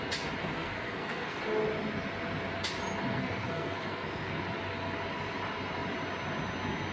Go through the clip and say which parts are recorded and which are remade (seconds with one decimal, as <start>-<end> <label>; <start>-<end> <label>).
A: 0.0-0.4 recorded; 0.4-1.4 remade; 1.4-3.1 recorded; 3.1-4.4 remade; 4.4-6.9 recorded

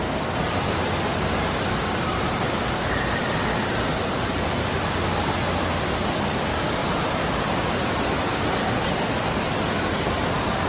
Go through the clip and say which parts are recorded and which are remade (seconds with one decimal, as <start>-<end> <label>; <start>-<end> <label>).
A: 0.0-6.8 recorded; 6.8-8.8 remade; 8.8-10.7 recorded

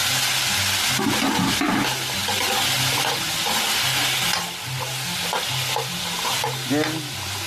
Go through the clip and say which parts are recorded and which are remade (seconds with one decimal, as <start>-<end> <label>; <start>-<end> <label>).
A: 0.0-7.5 recorded

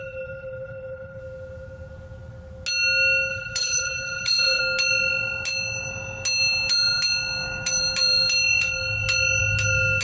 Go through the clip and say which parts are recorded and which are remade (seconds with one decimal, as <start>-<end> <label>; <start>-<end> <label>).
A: 0.0-1.2 remade; 1.2-3.3 recorded; 3.3-4.6 remade; 4.6-10.0 recorded

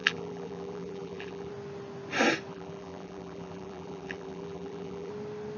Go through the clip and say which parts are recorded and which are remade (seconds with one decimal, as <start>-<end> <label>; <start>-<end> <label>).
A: 0.0-1.5 remade; 1.5-2.5 recorded; 2.5-5.1 remade; 5.1-5.6 recorded

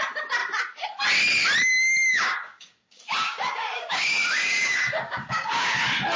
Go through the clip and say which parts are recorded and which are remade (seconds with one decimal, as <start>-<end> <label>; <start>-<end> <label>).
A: 0.0-2.1 recorded; 2.1-5.8 remade; 5.8-6.2 recorded

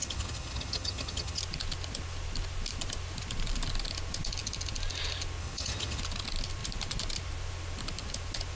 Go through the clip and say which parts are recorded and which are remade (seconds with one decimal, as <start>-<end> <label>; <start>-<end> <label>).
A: 0.0-1.4 remade; 1.4-5.4 recorded; 5.4-6.0 remade; 6.0-8.6 recorded

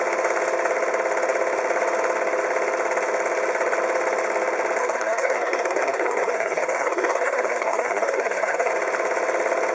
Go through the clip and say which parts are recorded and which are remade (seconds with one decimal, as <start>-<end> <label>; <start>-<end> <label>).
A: 0.0-4.8 recorded; 4.8-8.7 remade; 8.7-9.7 recorded